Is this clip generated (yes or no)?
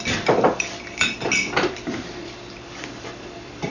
yes